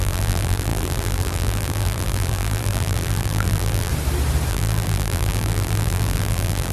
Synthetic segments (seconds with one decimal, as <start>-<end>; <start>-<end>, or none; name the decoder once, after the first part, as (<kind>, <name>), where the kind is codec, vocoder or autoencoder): 0.0-3.9 (vocoder, BigVGAN v2); 4.5-6.7